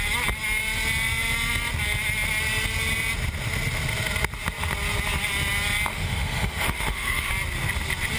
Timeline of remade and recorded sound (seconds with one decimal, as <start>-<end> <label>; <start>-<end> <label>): 0.0-5.9 recorded; 5.9-7.3 remade; 7.3-8.2 recorded

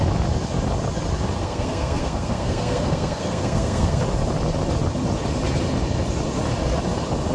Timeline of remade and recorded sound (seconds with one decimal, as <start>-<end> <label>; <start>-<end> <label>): 0.0-1.4 recorded; 1.4-4.0 remade; 4.0-7.3 recorded